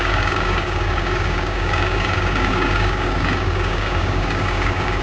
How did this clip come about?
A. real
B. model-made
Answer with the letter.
B